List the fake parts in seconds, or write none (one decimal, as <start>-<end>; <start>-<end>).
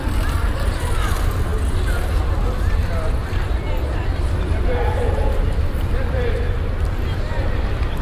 none